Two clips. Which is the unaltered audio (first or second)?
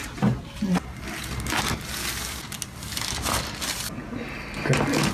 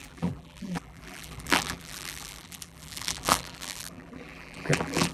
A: first